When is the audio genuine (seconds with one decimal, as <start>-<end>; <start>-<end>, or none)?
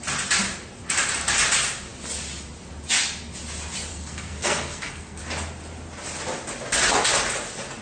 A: 0.0-3.9; 5.2-7.8